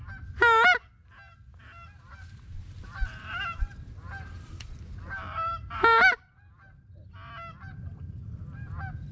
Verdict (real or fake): real